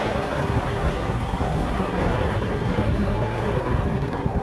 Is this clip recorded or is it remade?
remade